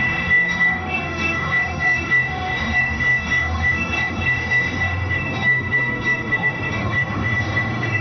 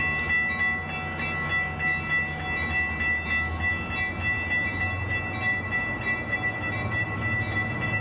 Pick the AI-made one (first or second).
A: first